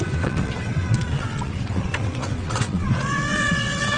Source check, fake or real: fake